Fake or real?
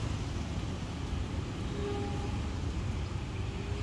real